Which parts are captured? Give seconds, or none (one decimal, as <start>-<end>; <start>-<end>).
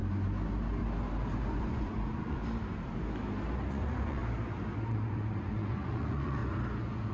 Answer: 0.0-1.4; 2.4-3.7; 4.2-4.9; 6.4-7.1